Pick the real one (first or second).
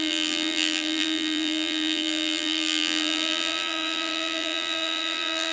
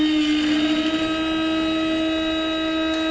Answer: second